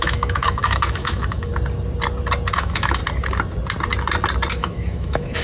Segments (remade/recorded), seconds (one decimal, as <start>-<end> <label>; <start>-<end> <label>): 0.0-1.5 remade; 1.5-2.5 recorded; 2.5-3.0 remade; 3.0-4.5 recorded; 4.5-5.4 remade